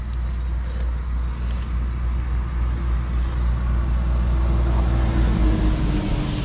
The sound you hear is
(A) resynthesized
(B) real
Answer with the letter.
B